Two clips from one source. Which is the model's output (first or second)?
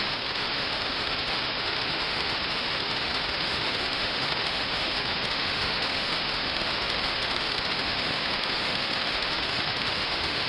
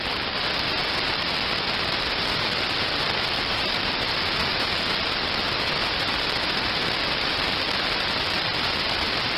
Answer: first